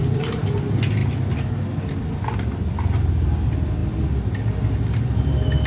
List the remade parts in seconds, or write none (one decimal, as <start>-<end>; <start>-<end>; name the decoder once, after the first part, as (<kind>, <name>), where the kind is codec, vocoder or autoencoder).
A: none